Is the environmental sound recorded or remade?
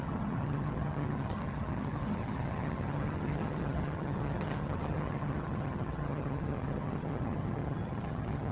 remade